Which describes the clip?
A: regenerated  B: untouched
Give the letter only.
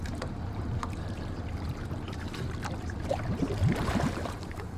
A